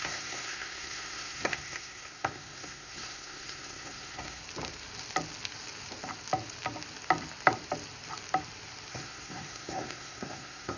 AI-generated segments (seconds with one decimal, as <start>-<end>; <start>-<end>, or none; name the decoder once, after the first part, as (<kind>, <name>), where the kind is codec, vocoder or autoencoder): 0.0-4.4 (codec, SNAC); 8.9-10.8